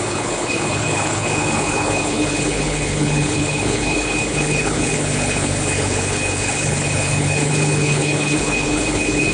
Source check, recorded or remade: remade